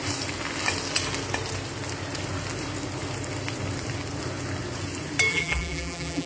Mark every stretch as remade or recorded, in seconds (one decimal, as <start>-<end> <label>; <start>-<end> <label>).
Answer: 0.0-5.3 recorded; 5.3-6.3 remade